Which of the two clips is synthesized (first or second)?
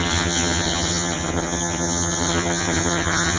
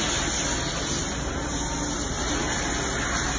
first